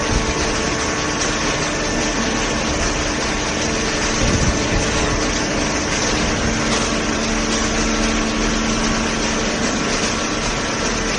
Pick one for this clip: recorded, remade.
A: recorded